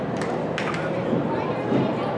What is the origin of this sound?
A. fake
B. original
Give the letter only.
B